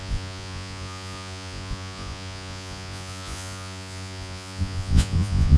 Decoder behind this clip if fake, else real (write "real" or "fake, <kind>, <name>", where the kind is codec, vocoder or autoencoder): fake, vocoder, Vocos